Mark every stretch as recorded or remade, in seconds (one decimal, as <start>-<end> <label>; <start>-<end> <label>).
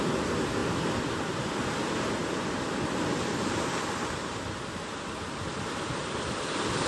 0.0-6.9 recorded